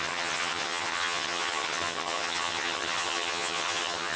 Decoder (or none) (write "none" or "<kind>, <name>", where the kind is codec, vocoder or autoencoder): vocoder, HiFi-GAN